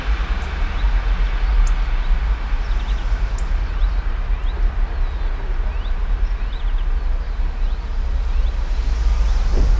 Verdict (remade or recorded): recorded